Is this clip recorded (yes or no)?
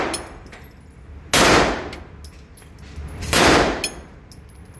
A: yes